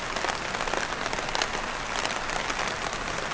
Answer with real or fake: real